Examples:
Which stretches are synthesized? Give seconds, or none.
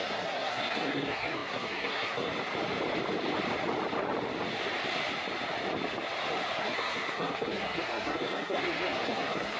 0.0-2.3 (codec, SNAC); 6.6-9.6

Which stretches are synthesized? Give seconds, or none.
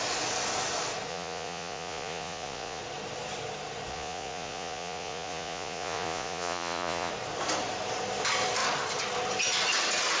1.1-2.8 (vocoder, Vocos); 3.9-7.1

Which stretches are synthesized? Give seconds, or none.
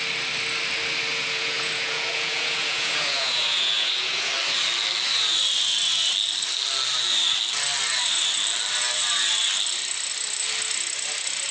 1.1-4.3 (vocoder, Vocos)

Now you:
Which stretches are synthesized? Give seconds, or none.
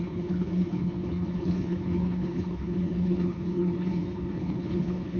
0.0-5.2 (codec, HILCodec)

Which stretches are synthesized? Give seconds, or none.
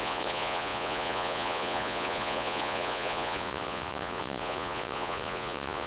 0.0-5.9 (vocoder, Vocos)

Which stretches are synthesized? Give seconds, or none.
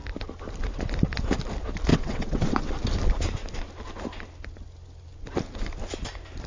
1.9-2.7 (vocoder, WaveNeXt)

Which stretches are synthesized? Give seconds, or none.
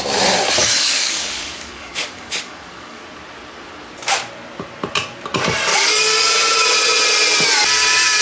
0.6-3.0 (codec, DAC); 5.7-6.3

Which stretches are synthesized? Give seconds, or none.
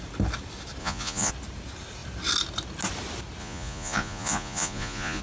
0.8-1.3 (vocoder, Vocos); 3.4-5.2